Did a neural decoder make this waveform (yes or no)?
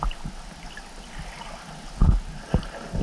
no